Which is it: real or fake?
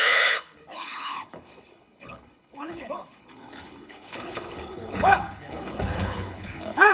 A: fake